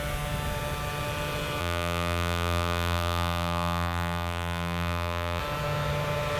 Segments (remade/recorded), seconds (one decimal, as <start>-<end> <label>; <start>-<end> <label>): 0.0-1.6 recorded; 1.6-5.4 remade; 5.4-6.4 recorded

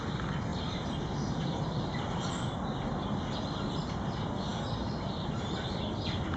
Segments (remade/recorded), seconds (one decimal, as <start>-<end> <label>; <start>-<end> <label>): 0.0-0.5 recorded; 0.5-2.6 remade; 2.6-6.4 recorded

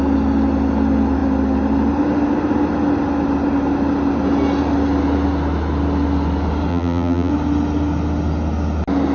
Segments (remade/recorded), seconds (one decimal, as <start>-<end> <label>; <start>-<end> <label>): 0.0-6.7 recorded; 6.7-7.3 remade; 7.3-9.1 recorded

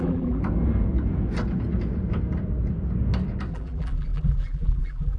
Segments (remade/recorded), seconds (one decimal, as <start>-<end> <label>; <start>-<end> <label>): 0.0-0.4 remade; 0.4-3.5 recorded; 3.5-5.2 remade

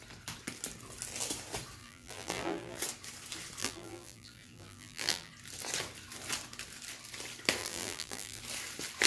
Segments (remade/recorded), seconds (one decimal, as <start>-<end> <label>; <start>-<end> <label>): 0.0-1.8 recorded; 1.8-2.8 remade; 2.8-3.6 recorded; 3.6-5.3 remade; 5.3-7.6 recorded; 7.6-8.4 remade; 8.4-9.1 recorded

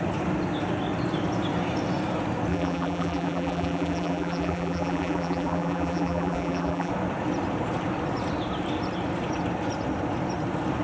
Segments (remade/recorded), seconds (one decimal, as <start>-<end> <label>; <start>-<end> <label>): 0.0-2.5 recorded; 2.5-6.9 remade; 6.9-10.8 recorded

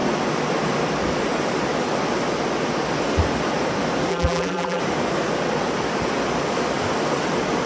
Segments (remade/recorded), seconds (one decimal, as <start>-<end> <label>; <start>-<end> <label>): 0.0-4.1 recorded; 4.1-4.8 remade; 4.8-7.7 recorded

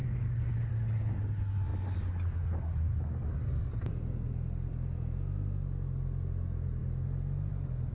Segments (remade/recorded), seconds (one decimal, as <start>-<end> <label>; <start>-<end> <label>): 0.0-7.9 recorded